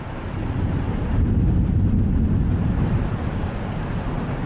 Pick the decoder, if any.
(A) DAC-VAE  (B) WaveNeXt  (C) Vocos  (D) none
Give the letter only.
D